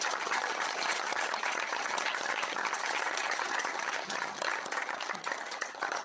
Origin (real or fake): fake